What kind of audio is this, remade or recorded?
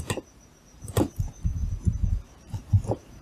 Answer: remade